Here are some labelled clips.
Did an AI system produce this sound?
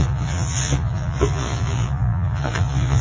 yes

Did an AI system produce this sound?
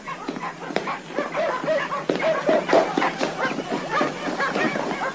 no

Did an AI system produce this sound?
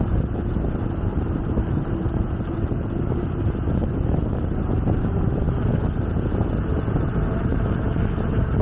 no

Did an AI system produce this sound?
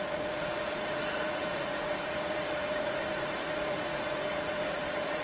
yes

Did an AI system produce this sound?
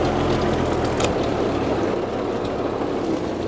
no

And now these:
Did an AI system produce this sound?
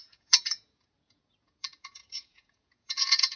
yes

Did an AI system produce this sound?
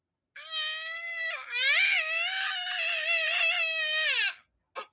no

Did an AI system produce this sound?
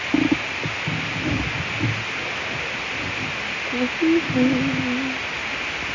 no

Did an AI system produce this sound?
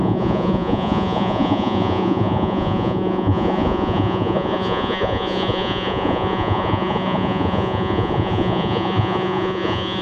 yes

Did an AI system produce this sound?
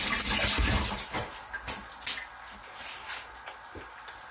no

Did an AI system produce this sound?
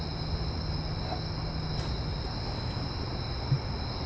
no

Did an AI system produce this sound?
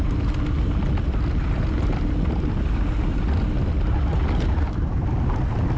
no